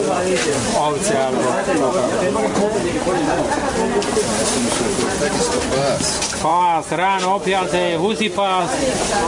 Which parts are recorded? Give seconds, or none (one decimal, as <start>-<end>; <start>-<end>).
0.0-9.3